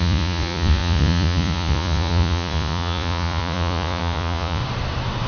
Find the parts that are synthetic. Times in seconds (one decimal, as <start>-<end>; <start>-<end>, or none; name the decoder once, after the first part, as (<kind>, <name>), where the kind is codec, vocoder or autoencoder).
0.0-4.6 (vocoder, Vocos)